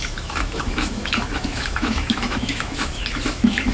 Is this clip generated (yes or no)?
yes